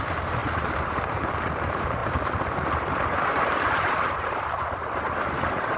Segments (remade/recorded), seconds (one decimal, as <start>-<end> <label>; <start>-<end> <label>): 0.0-5.8 remade